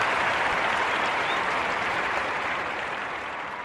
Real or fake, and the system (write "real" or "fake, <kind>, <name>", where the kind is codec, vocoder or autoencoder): fake, vocoder, BigVGAN v2